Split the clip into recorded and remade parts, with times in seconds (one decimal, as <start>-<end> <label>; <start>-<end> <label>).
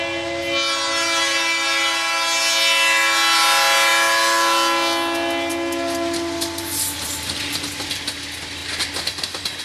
0.0-9.6 recorded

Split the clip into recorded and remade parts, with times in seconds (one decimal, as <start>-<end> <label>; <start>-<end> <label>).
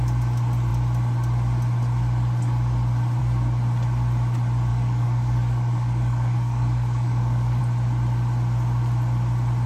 0.0-4.7 recorded; 4.7-7.6 remade; 7.6-9.7 recorded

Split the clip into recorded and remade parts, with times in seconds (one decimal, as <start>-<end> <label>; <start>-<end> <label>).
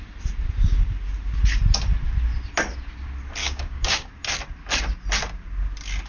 0.0-3.4 recorded; 3.4-4.1 remade; 4.1-6.1 recorded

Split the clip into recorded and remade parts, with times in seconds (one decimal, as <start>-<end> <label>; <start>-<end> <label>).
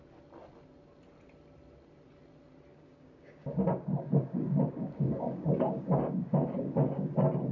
0.0-2.7 recorded; 2.7-7.1 remade; 7.1-7.5 recorded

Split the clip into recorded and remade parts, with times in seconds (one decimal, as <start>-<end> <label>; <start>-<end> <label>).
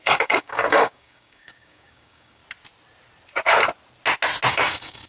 0.0-2.4 remade; 2.4-4.5 recorded; 4.5-5.1 remade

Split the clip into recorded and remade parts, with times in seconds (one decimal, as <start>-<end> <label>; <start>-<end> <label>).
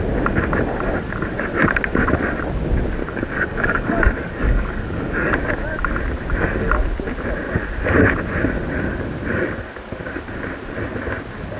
0.0-3.0 recorded; 3.0-5.3 remade; 5.3-11.6 recorded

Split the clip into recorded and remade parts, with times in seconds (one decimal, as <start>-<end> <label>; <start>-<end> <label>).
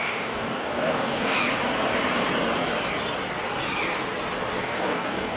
0.0-1.4 remade; 1.4-4.6 recorded; 4.6-5.4 remade